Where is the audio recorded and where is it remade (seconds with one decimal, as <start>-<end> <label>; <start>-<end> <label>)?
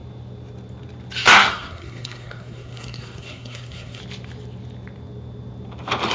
0.0-1.5 recorded; 1.5-4.0 remade; 4.0-6.1 recorded